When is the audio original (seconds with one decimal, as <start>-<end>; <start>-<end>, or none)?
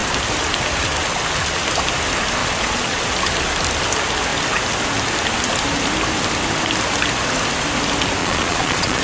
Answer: 0.0-2.4; 3.0-8.2